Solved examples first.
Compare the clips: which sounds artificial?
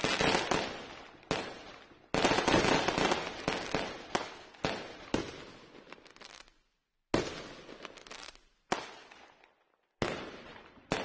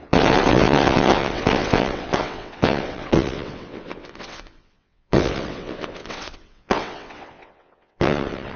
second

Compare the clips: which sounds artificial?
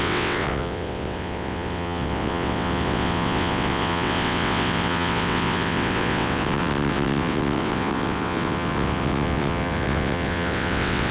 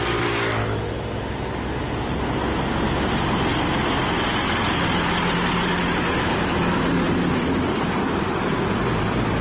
first